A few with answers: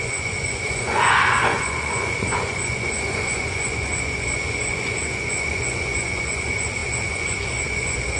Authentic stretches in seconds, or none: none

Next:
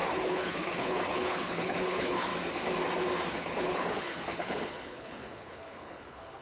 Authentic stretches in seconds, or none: 2.3-3.3

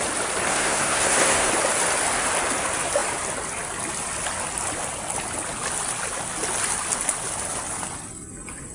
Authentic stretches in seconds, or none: 0.0-0.5; 1.5-8.7

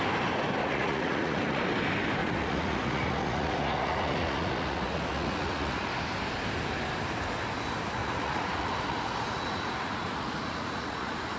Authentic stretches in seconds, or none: 0.0-0.6; 1.6-2.2; 5.9-8.0

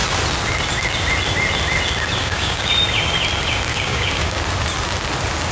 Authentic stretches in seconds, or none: 0.0-2.2; 2.7-3.7; 4.4-5.5

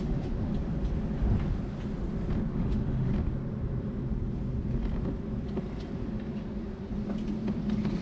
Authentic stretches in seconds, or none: 0.5-2.5; 3.1-8.0